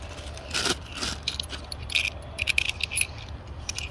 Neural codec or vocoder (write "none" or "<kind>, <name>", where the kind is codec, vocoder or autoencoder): none